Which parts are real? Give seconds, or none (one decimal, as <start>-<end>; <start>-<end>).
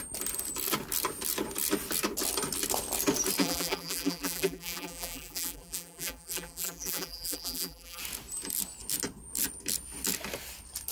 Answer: 0.0-3.4; 8.0-10.9